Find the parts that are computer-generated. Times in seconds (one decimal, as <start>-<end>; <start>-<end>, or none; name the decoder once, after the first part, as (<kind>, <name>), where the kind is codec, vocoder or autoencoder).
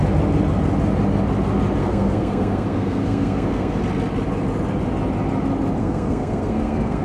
1.8-3.8 (codec, SNAC); 5.8-7.0